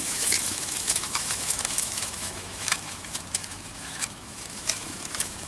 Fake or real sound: fake